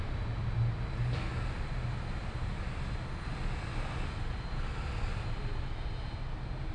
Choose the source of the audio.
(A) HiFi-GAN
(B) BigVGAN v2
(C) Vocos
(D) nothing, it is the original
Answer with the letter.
D